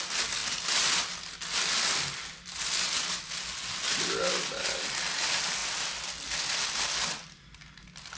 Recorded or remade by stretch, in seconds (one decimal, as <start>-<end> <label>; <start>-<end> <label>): 0.0-8.2 recorded